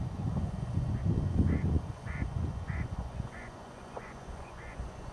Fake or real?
fake